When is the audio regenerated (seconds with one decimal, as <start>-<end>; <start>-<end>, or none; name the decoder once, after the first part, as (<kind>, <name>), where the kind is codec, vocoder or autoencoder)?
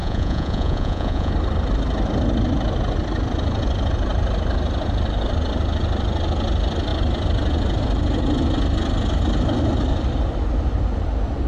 0.0-1.3 (vocoder, Vocos)